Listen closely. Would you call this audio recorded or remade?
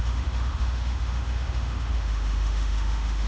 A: remade